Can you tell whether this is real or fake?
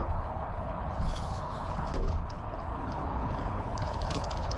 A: fake